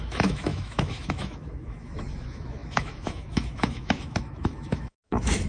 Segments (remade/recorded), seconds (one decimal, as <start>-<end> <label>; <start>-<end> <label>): 0.0-5.5 remade